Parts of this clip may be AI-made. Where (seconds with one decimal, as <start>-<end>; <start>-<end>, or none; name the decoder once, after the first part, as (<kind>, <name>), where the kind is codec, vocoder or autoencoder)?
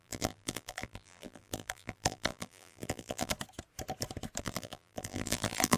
0.0-3.3 (vocoder, BigVGAN v2); 4.4-5.8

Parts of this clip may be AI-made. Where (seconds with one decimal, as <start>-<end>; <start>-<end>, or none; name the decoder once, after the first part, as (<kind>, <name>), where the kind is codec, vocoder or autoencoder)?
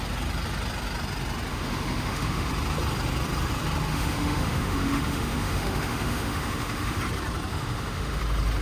1.5-2.5 (autoencoder, DAC-VAE); 3.9-7.0; 7.5-8.2